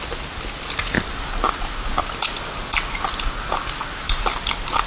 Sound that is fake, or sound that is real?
real